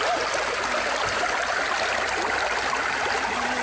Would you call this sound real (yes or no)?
yes